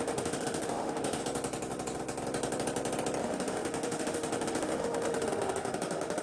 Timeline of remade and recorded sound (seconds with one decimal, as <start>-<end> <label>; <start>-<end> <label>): 0.0-1.2 remade; 1.2-3.2 recorded; 3.2-6.2 remade